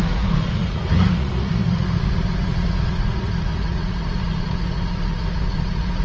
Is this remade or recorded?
remade